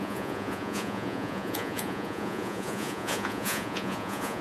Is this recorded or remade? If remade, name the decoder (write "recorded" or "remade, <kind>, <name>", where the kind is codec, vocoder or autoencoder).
remade, vocoder, Vocos